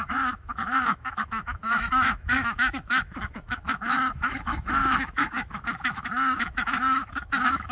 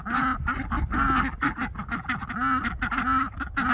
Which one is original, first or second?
second